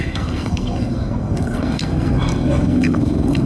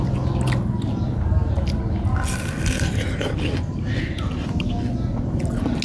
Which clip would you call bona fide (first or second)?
second